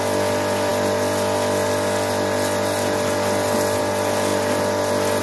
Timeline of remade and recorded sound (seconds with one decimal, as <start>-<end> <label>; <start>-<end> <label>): 0.0-5.2 recorded